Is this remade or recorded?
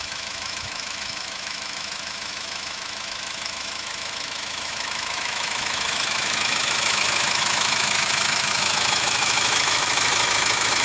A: remade